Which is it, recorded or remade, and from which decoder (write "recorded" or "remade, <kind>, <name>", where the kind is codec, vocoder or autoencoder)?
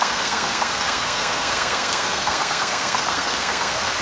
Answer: remade, codec, SNAC